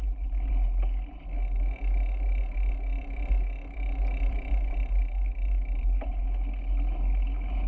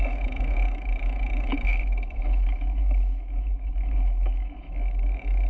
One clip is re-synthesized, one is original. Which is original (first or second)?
first